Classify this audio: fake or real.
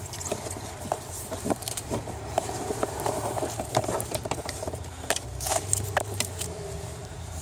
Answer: fake